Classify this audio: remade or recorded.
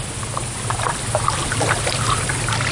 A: recorded